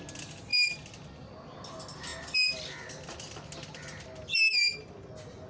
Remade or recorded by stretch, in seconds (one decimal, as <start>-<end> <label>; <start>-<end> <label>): 0.0-5.5 recorded